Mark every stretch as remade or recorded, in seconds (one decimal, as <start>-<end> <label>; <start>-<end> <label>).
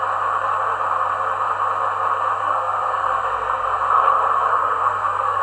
0.0-2.4 recorded; 2.4-3.8 remade; 3.8-4.5 recorded; 4.5-5.4 remade